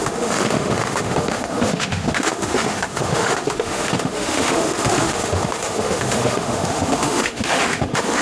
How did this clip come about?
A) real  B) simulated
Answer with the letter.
B